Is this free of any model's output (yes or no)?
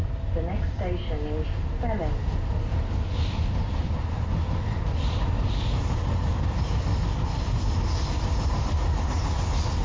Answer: yes